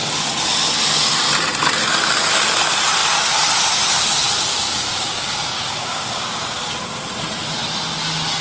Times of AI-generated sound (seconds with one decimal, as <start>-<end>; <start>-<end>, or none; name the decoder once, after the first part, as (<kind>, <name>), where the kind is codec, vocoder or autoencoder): 4.5-6.7 (codec, DAC)

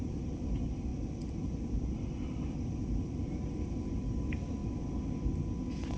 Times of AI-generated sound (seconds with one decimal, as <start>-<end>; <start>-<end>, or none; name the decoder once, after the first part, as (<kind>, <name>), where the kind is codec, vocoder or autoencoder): none

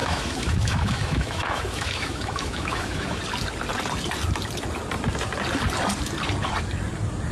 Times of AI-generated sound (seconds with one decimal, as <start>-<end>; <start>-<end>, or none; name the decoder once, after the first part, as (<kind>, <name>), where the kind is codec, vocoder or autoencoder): 0.0-3.2 (autoencoder, DAC-VAE)

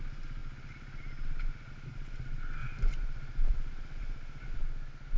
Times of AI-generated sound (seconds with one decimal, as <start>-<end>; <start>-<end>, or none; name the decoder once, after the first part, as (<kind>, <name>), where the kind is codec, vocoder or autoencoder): 2.6-4.6 (vocoder, BigVGAN v2)